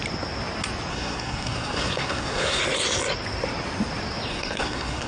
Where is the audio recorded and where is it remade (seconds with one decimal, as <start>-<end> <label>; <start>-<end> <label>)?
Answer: 0.0-0.9 recorded; 0.9-2.6 remade; 2.6-4.3 recorded; 4.3-5.1 remade